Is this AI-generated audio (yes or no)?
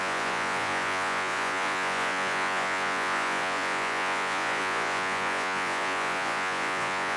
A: yes